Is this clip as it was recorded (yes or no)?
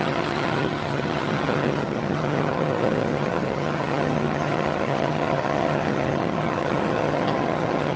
no